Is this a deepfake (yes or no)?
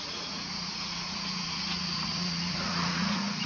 yes